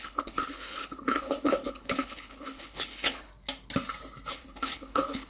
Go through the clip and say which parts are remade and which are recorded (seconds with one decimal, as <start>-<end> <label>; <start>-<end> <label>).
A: 0.0-3.3 remade; 3.3-4.3 recorded; 4.3-5.3 remade